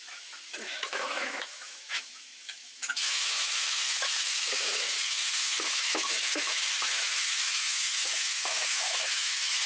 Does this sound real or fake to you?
fake